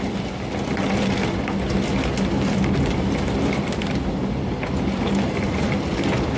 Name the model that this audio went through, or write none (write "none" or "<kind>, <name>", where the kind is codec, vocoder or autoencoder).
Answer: none